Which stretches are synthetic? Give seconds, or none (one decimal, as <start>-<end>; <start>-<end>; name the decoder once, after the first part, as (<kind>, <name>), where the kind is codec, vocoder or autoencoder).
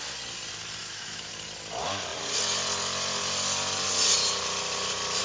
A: 0.8-1.3 (autoencoder, DAC-VAE)